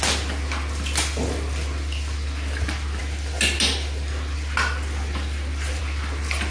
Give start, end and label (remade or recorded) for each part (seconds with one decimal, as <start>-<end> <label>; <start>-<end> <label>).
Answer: 0.0-6.5 recorded